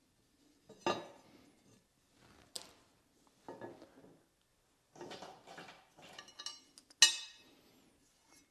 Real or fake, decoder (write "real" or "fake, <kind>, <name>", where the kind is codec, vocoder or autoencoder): real